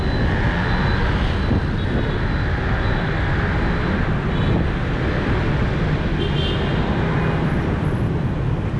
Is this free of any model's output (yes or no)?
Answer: yes